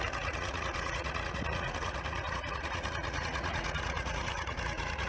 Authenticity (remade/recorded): remade